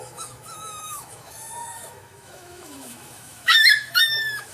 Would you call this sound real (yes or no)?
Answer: no